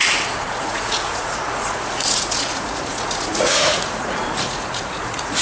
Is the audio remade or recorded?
remade